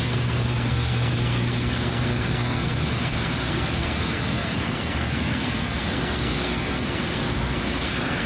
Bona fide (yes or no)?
no